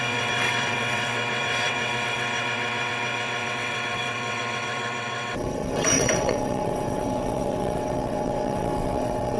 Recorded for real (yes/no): no